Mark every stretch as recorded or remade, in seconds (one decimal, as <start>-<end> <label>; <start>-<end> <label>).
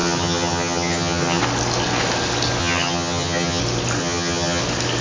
0.0-1.4 remade; 1.4-2.6 recorded; 2.6-3.6 remade; 3.6-4.0 recorded; 4.0-4.6 remade; 4.6-5.0 recorded